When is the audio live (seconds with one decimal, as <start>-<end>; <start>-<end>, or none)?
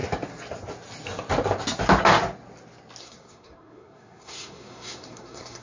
0.0-3.0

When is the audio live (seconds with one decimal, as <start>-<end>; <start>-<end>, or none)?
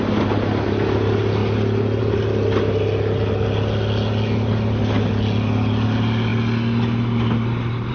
0.0-7.9